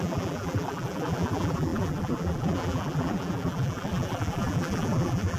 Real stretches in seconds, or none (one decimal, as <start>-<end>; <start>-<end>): none